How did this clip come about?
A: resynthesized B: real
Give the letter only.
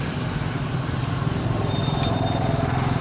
B